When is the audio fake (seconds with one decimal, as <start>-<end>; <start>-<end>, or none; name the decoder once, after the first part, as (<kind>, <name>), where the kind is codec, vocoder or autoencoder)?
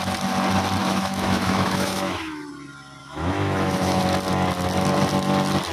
0.8-2.5 (autoencoder, DAC-VAE); 3.0-4.0